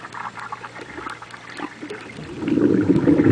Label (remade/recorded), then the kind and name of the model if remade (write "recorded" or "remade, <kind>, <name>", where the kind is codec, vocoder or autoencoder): recorded